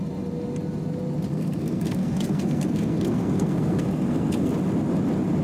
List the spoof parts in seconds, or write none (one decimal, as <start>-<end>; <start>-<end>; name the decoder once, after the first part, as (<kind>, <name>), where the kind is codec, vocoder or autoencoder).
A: 1.3-4.5 (codec, SNAC)

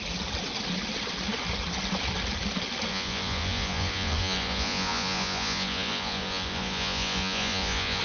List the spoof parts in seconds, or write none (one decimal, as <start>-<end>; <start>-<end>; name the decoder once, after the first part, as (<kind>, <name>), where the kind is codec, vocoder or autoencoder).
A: 2.9-8.0 (vocoder, Vocos)

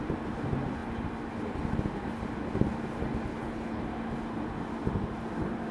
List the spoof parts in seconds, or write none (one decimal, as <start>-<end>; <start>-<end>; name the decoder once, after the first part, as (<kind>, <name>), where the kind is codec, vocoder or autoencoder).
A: 3.3-3.8 (codec, HILCodec)

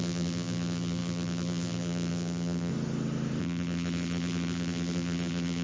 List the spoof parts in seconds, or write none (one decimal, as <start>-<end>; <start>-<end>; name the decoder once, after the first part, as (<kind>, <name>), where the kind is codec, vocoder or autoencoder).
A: 0.0-2.7 (vocoder, BigVGAN v2); 3.4-5.6

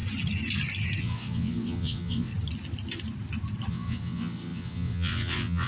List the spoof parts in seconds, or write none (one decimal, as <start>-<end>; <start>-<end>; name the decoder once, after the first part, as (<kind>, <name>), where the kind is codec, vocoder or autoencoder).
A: 1.0-2.3 (vocoder, WaveNeXt); 3.7-5.7